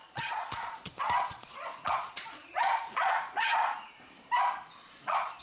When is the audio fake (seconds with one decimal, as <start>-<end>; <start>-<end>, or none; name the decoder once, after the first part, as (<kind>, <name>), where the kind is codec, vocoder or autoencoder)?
0.0-3.5 (vocoder, Vocos); 4.8-5.4